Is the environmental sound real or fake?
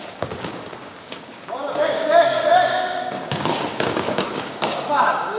fake